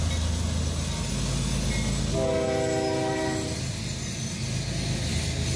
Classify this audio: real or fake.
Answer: real